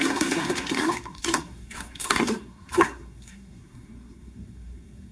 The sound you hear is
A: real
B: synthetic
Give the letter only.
B